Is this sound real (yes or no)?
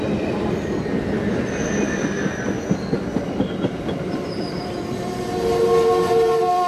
yes